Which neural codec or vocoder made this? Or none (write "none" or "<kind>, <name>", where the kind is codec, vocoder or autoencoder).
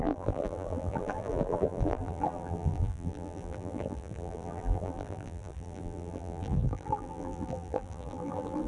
vocoder, BigVGAN v2